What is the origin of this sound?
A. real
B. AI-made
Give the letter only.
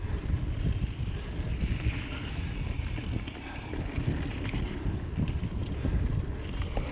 A